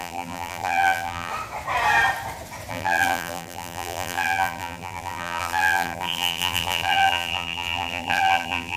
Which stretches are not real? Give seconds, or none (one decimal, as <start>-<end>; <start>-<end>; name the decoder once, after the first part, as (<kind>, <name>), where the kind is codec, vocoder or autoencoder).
0.0-1.3 (vocoder, BigVGAN v2); 2.7-8.8